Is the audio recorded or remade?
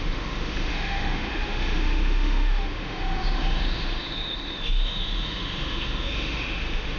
remade